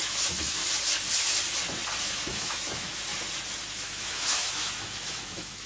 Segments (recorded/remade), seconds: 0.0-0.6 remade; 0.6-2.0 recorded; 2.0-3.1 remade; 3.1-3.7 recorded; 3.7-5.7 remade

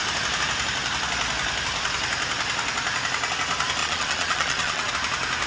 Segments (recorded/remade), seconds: 0.0-3.8 recorded; 3.8-4.9 remade; 4.9-5.5 recorded

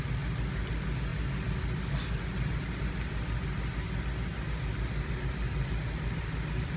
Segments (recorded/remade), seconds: 0.0-6.8 recorded

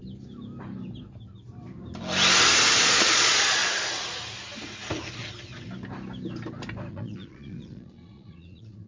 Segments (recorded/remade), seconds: 0.0-2.8 recorded; 2.8-3.6 remade; 3.6-6.9 recorded; 6.9-8.9 remade